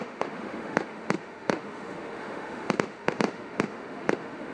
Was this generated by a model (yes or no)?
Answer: yes